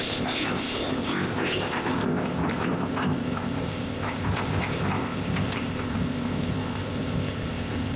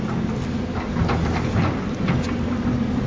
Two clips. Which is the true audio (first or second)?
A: second